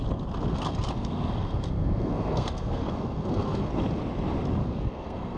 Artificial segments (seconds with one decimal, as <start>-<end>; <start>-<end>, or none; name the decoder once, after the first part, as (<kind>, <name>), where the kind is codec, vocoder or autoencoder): 0.5-3.7 (codec, SNAC); 4.6-5.4